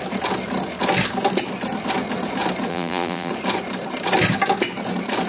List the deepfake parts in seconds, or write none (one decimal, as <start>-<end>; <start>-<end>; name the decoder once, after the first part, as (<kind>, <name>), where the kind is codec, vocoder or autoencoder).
2.7-3.3 (vocoder, BigVGAN v2)